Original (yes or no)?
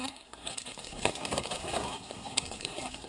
no